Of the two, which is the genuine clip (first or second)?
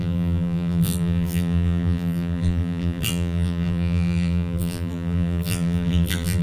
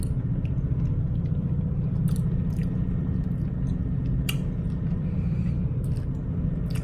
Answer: second